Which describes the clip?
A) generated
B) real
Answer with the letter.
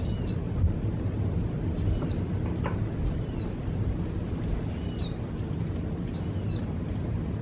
B